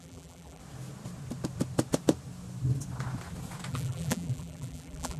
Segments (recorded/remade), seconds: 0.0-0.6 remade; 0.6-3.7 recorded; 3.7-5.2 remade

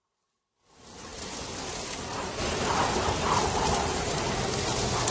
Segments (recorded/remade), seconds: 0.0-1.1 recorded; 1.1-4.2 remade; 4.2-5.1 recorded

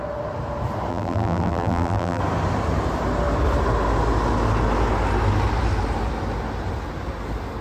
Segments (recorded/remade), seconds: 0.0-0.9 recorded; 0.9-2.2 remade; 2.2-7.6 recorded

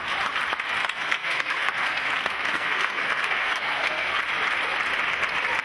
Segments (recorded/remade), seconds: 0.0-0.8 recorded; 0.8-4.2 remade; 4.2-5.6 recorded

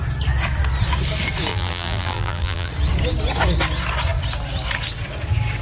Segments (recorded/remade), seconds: 0.0-1.5 recorded; 1.5-2.7 remade; 2.7-5.6 recorded

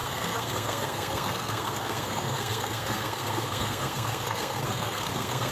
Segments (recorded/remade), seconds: 0.0-5.5 remade

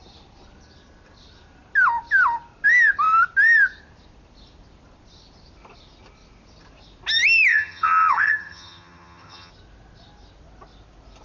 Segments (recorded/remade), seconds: 0.0-7.5 recorded; 7.5-9.5 remade; 9.5-11.2 recorded

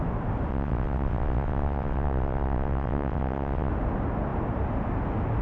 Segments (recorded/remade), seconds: 0.0-0.5 recorded; 0.5-3.7 remade; 3.7-5.4 recorded